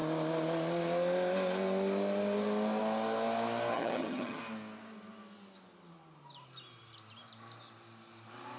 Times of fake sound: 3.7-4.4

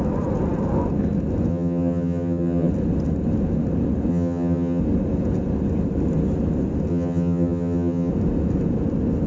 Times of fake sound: 1.5-2.7; 4.1-4.8; 6.9-8.1

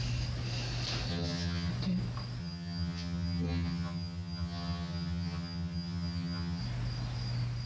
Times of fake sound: 1.1-1.7; 2.4-6.6

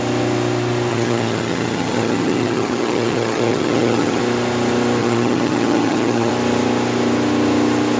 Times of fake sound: 0.9-4.2; 5.0-6.3

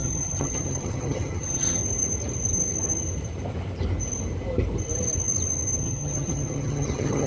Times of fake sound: 0.0-1.8; 5.8-7.3

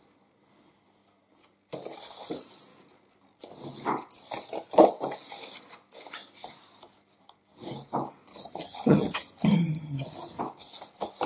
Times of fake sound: 8.3-10.4

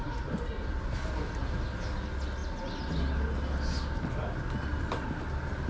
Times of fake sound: none

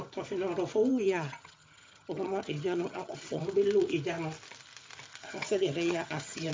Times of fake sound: 0.9-3.4; 5.2-6.5